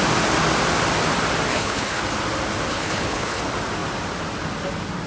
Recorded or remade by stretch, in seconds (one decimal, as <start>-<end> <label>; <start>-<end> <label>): 0.0-1.5 recorded; 1.5-2.0 remade; 2.0-2.7 recorded; 2.7-3.4 remade; 3.4-5.1 recorded